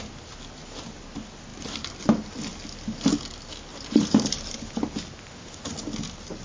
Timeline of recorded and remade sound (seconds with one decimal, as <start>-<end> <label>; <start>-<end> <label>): 0.0-3.7 recorded; 3.7-4.7 remade; 4.7-6.4 recorded